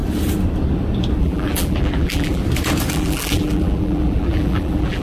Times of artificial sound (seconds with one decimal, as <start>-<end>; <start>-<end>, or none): 1.2-2.4; 2.9-5.0

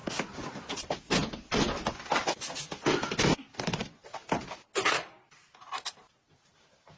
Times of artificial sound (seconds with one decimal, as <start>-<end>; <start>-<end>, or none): none

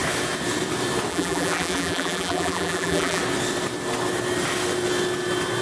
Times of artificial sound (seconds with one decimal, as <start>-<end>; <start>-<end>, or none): 1.1-3.2

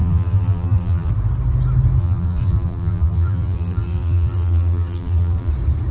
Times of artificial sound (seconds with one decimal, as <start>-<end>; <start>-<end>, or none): 0.0-1.1; 2.0-5.5